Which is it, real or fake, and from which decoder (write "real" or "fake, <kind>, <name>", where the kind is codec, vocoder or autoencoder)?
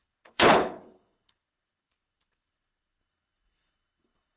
fake, codec, HILCodec